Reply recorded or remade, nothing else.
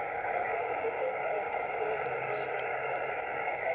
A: remade